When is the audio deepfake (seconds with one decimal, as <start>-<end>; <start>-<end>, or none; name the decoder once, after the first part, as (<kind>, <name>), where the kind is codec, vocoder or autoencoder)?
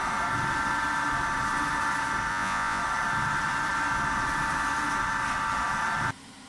2.3-2.8 (vocoder, Vocos)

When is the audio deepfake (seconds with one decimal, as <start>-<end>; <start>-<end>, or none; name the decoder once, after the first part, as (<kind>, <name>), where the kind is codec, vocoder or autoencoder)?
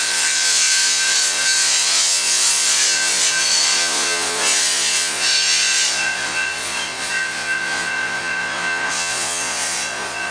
0.0-10.3 (vocoder, Vocos)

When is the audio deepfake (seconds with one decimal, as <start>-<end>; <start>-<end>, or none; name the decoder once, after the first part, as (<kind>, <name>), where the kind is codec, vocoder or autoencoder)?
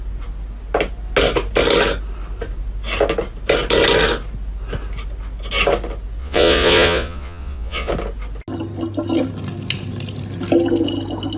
6.2-7.9 (vocoder, Vocos)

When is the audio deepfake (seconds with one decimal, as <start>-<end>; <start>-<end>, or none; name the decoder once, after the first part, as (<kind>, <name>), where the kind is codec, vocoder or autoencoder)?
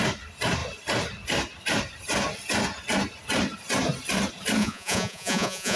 4.6-5.8 (vocoder, Vocos)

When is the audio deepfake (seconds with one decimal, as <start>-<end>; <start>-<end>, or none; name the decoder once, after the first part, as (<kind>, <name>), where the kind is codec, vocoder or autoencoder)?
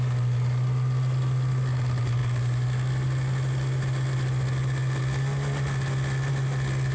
none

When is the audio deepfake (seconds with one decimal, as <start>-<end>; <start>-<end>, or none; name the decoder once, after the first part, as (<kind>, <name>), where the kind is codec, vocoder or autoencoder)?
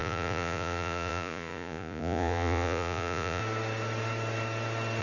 0.0-3.4 (vocoder, Vocos)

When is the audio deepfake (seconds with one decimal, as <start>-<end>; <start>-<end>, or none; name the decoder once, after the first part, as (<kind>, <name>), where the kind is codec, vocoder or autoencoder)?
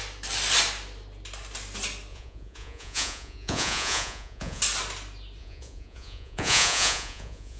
2.1-4.6 (vocoder, Vocos); 5.4-7.6